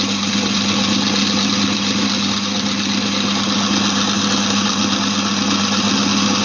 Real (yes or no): yes